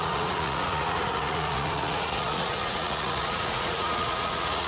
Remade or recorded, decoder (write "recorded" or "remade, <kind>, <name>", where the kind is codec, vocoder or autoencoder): remade, vocoder, Vocos